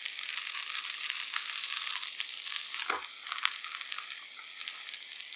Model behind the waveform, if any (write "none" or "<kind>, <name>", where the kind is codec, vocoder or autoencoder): none